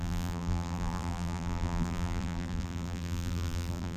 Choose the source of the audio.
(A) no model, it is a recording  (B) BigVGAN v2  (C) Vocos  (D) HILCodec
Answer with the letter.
B